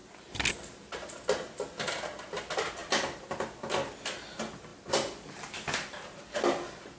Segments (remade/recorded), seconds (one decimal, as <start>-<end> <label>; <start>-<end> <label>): 0.0-7.0 recorded